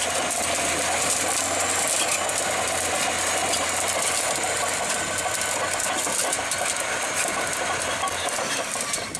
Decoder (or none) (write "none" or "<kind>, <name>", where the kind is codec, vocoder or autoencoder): none